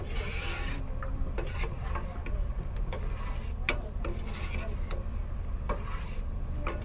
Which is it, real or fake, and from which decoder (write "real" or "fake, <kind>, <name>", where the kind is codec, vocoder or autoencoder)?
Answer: fake, vocoder, BigVGAN v2